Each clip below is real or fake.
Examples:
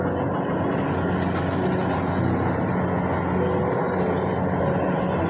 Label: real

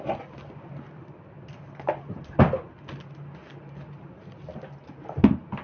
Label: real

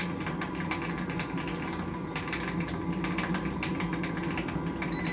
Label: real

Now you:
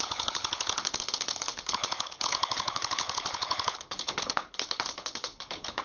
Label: fake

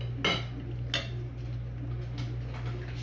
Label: real